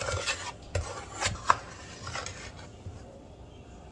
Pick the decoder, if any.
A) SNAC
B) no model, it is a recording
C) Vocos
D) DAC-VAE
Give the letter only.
B